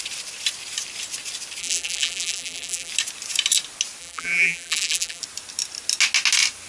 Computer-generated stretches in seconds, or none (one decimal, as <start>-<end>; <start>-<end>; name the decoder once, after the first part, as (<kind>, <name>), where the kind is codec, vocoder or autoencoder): 1.6-2.9 (vocoder, BigVGAN v2); 4.0-5.2